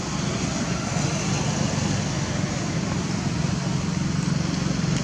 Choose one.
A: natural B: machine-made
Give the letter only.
A